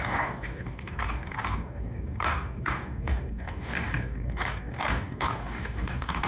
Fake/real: fake